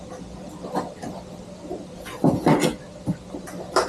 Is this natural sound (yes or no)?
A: yes